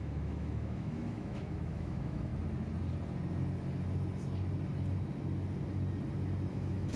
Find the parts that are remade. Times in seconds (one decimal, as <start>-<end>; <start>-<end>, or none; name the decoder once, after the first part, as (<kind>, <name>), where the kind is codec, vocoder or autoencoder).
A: 0.0-2.3 (autoencoder, DAC-VAE); 6.5-7.0